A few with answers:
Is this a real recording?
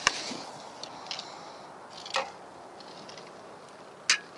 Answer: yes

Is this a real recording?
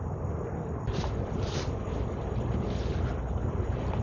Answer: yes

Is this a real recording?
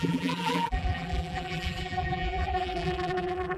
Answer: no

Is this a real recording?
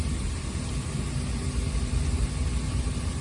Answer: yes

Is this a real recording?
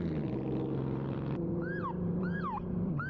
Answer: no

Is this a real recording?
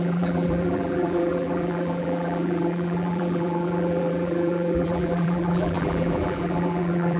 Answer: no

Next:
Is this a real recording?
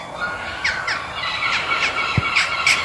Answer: no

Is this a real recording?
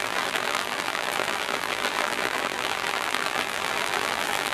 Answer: no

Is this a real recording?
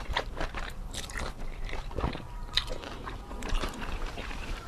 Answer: no